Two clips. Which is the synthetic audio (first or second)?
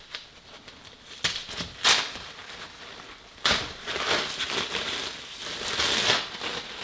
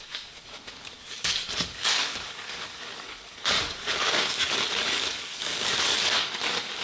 second